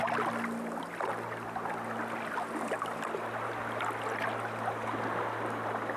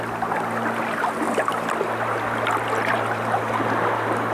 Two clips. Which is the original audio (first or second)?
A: first